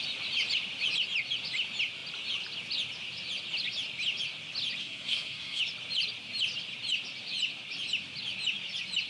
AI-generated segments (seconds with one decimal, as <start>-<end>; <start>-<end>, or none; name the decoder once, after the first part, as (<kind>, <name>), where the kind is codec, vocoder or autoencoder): 4.8-5.6 (codec, SNAC)